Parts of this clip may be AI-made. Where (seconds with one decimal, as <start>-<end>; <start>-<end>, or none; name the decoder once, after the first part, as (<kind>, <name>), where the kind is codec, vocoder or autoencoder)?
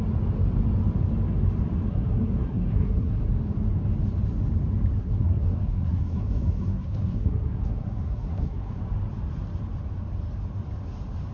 1.9-3.2 (codec, SNAC); 5.0-8.8